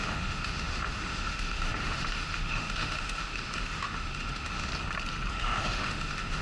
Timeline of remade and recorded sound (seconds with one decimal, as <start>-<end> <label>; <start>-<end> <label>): 0.0-4.7 remade; 4.7-5.3 recorded; 5.3-6.4 remade